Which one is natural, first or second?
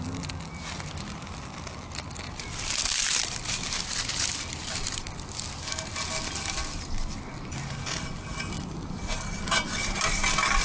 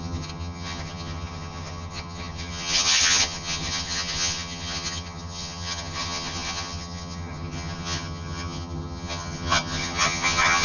first